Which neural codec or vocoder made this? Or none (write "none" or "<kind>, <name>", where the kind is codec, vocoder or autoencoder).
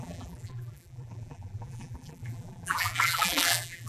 vocoder, BigVGAN v2